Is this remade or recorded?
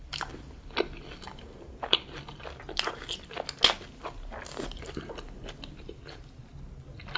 recorded